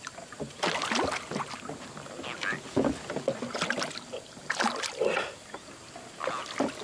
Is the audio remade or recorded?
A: recorded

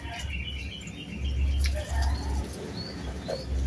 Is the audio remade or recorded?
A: recorded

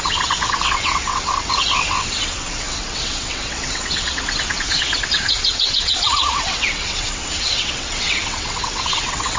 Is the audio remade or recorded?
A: remade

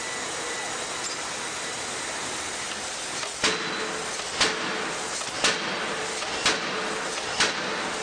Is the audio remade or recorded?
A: recorded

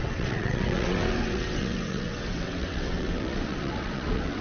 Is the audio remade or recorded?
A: remade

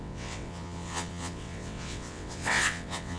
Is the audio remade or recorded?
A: remade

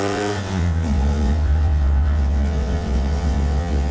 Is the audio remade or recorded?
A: remade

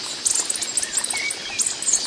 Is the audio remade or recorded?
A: recorded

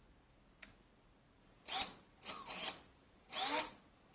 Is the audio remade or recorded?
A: recorded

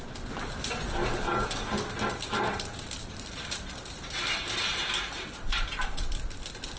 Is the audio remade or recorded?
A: recorded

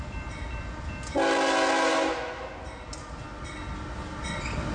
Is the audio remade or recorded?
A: recorded